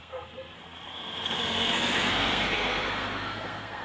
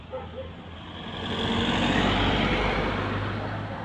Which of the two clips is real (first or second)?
second